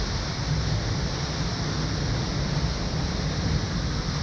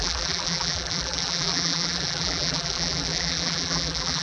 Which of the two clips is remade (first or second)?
second